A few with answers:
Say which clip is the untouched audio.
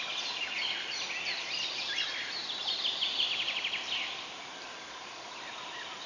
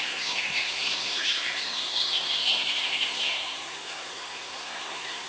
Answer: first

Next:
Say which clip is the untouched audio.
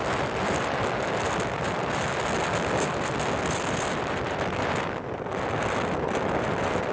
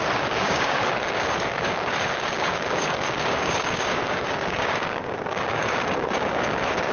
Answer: first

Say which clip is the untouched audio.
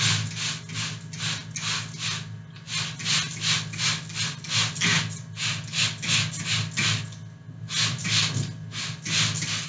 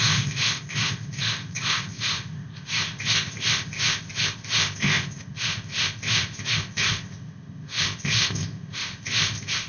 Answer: first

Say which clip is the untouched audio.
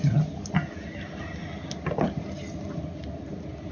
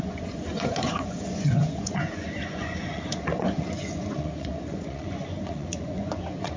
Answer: first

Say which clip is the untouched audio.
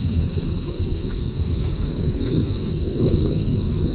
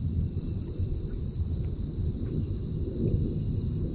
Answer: second